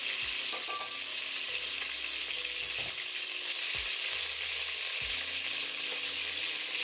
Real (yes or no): yes